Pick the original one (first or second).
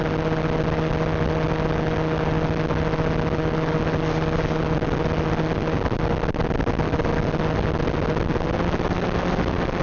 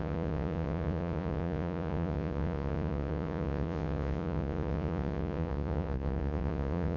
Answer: first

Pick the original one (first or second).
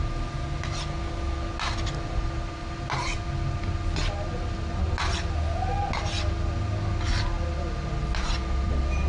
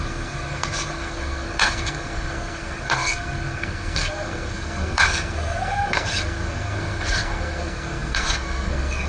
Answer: first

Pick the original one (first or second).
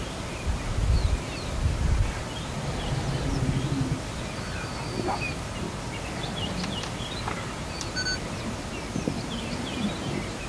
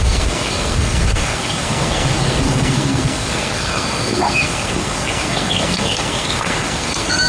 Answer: first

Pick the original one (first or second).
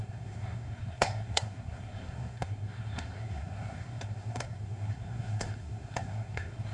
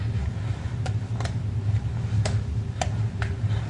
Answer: second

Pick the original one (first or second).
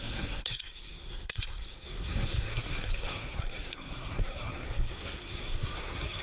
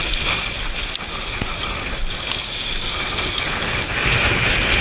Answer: second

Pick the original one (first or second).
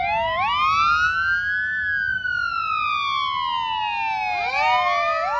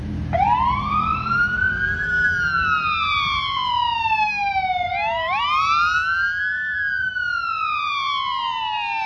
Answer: first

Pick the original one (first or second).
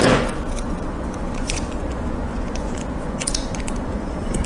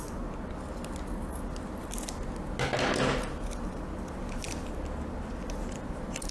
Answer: second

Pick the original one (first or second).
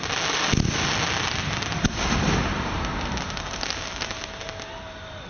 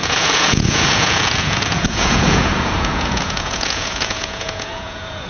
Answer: first